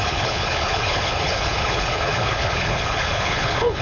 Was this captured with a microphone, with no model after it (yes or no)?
no